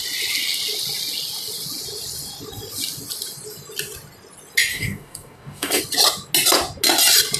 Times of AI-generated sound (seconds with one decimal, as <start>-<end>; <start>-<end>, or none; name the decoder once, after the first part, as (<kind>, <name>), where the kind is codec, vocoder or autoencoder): 4.7-5.8 (codec, DAC)